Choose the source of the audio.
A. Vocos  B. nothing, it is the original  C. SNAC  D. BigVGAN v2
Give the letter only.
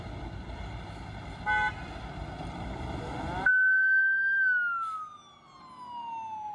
B